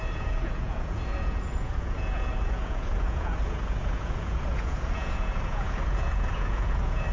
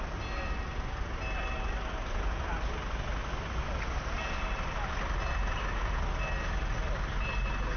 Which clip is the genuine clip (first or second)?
second